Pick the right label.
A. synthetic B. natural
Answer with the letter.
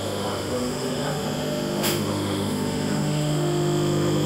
A